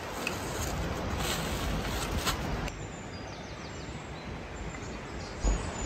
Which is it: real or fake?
real